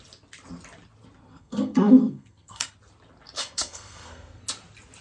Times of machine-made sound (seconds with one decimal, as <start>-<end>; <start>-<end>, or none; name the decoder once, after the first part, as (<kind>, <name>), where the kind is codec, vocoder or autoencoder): 1.3-2.7 (codec, SNAC); 3.4-4.4